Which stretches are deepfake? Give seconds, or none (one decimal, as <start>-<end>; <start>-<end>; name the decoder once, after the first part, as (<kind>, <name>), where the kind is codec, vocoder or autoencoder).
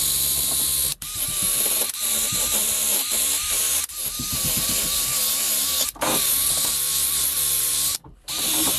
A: 2.6-3.8 (vocoder, BigVGAN v2); 7.9-8.8